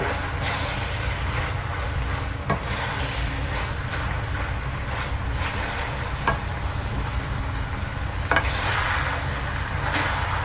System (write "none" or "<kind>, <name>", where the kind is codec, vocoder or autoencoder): none